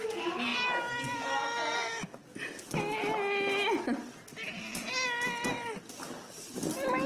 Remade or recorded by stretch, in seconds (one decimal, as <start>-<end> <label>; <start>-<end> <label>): 0.0-7.1 recorded

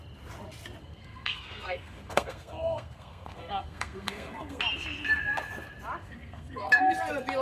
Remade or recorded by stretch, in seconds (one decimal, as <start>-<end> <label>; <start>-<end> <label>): 0.0-0.8 recorded; 0.8-4.6 remade; 4.6-6.0 recorded; 6.0-6.9 remade; 6.9-7.4 recorded

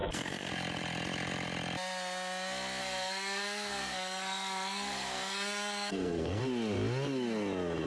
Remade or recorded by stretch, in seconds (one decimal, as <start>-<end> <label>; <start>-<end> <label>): 0.0-0.5 remade; 0.5-2.8 recorded; 2.8-6.4 remade; 6.4-7.9 recorded

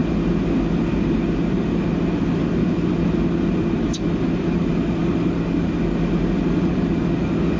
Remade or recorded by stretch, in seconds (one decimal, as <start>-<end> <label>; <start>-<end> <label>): 0.0-7.6 recorded

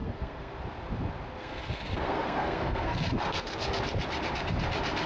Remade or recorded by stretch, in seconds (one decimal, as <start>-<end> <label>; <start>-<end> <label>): 0.0-0.6 remade; 0.6-1.4 recorded; 1.4-3.8 remade; 3.8-5.1 recorded